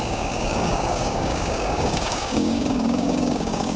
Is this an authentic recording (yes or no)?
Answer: no